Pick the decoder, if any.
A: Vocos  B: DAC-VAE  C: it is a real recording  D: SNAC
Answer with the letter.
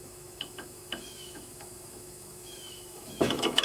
B